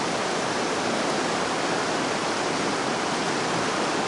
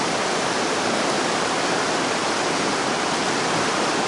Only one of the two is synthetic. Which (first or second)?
second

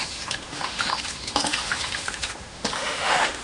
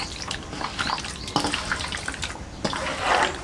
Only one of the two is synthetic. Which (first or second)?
first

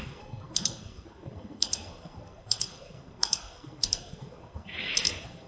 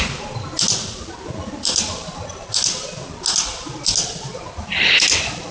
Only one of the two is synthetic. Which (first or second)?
first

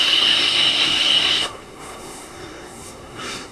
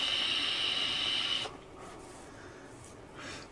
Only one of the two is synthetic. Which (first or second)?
first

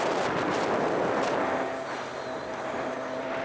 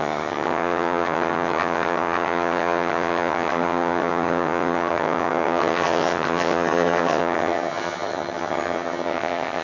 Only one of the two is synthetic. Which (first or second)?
second